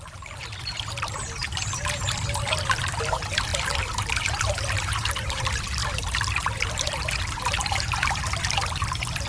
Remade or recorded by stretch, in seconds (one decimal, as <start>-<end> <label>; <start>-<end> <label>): 0.0-3.5 recorded; 3.5-5.1 remade; 5.1-5.8 recorded; 5.8-8.9 remade; 8.9-9.3 recorded